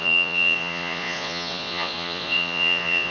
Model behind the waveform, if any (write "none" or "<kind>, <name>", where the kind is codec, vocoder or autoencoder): vocoder, Vocos